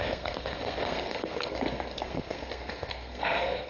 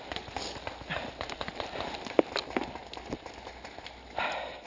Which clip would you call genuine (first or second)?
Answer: second